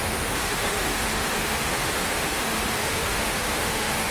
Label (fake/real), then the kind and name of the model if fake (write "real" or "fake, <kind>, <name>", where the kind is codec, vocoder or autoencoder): fake, autoencoder, DAC-VAE